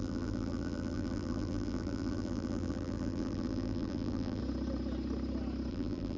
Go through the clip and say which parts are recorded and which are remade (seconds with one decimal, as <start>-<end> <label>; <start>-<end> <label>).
0.0-4.4 remade; 4.4-5.7 recorded; 5.7-6.2 remade